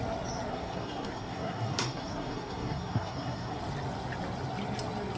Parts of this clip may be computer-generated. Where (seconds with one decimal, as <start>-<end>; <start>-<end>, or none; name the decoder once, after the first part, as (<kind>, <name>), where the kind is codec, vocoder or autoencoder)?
0.5-3.6 (codec, SNAC)